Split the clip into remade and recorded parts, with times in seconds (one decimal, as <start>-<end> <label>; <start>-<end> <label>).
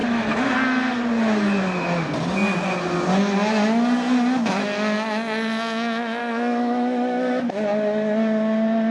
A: 0.0-0.5 remade; 0.5-6.2 recorded; 6.2-7.5 remade; 7.5-8.9 recorded